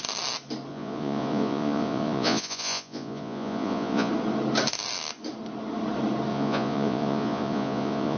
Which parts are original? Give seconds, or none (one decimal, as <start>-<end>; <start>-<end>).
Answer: 0.0-0.7; 4.1-6.3